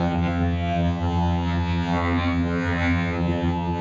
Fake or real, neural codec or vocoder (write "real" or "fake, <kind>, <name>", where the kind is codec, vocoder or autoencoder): fake, vocoder, HiFi-GAN